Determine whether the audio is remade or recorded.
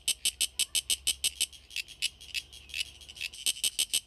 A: recorded